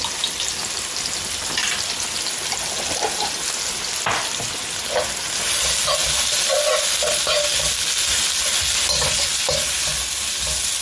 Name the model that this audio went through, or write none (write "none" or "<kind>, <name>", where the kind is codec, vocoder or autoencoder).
none